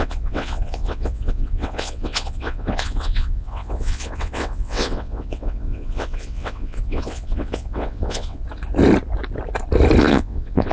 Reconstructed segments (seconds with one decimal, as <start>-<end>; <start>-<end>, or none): 0.0-8.4; 10.0-10.7